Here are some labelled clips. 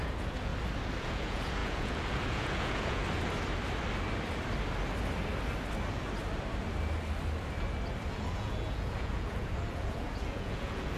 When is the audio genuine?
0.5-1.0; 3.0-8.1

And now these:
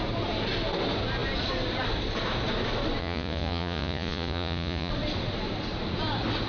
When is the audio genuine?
0.0-3.0; 4.9-6.5

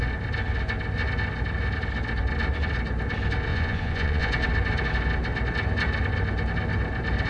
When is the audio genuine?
0.0-3.5; 4.3-7.3

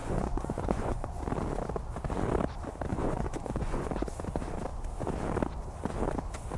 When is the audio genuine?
1.2-2.9; 3.9-6.6